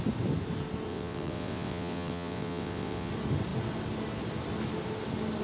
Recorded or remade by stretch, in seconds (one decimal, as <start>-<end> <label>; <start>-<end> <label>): 0.0-0.9 recorded; 0.9-3.1 remade; 3.1-5.4 recorded